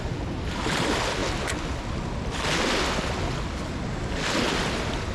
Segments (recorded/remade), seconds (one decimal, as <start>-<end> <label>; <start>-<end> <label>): 0.0-5.1 recorded